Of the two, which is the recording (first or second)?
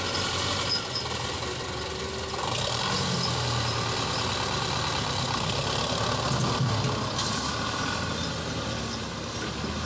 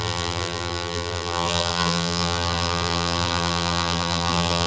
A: first